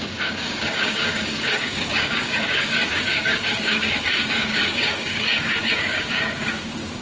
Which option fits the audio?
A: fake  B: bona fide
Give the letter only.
A